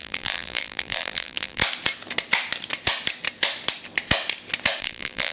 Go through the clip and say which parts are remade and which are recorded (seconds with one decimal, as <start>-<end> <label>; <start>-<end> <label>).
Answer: 0.0-1.6 remade; 1.6-4.8 recorded; 4.8-5.3 remade